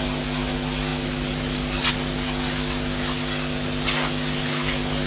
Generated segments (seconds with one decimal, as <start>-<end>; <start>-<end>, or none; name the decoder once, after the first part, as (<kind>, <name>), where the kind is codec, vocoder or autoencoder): none